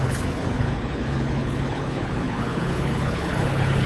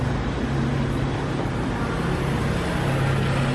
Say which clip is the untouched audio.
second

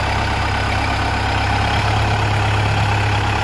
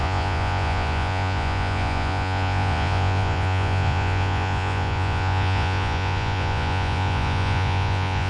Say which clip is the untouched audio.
first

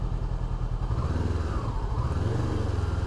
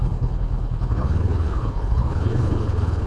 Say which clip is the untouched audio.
first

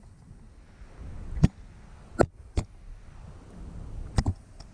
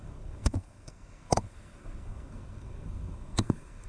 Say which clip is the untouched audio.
first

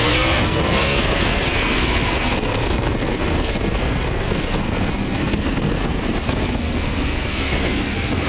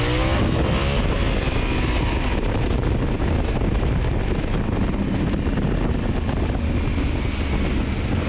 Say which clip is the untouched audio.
second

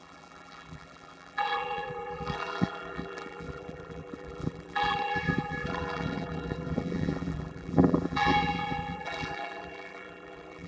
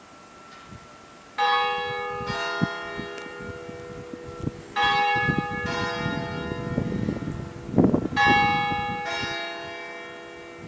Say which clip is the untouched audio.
second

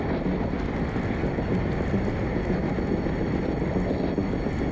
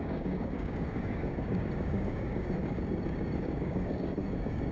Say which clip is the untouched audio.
first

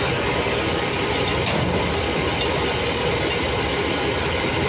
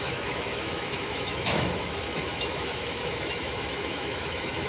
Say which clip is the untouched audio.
first